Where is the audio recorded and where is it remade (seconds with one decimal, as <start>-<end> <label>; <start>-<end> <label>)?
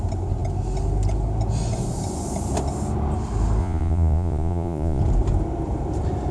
0.0-3.6 recorded; 3.6-5.0 remade; 5.0-6.3 recorded